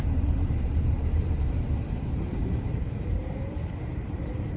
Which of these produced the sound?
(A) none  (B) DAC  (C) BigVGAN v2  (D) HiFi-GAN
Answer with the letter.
C